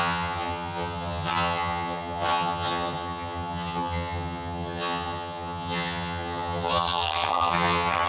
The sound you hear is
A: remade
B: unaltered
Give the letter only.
A